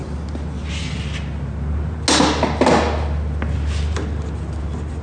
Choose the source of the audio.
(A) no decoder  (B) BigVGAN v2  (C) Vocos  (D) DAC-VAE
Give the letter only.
A